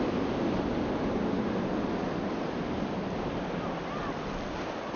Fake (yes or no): no